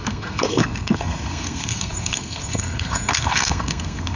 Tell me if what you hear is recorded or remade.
remade